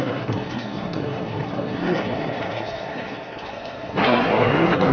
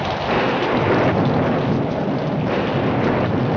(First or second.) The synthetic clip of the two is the first